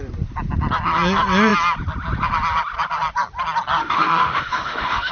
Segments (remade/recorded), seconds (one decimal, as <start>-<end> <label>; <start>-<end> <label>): 0.0-3.8 recorded; 3.8-5.1 remade